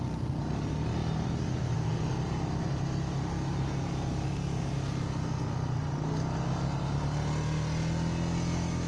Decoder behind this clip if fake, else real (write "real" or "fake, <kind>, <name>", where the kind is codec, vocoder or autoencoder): real